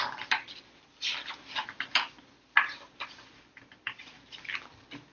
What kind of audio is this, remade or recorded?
recorded